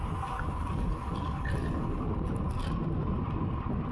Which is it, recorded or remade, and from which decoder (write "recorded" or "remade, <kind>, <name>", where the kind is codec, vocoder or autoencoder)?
recorded